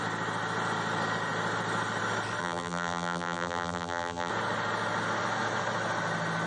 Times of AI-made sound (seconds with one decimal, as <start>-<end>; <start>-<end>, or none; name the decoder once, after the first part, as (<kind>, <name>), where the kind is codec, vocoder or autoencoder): 2.4-4.3 (vocoder, BigVGAN v2)